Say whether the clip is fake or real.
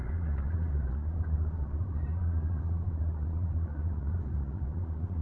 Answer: fake